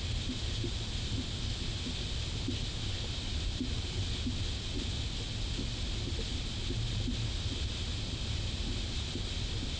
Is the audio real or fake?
real